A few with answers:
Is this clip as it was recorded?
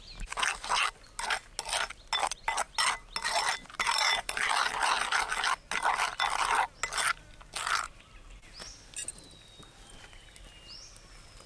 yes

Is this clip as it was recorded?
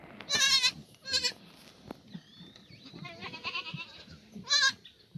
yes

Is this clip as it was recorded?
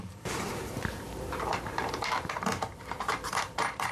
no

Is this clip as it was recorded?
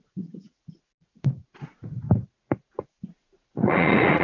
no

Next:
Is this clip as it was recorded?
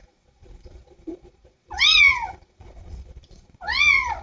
no